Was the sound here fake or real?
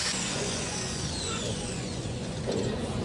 fake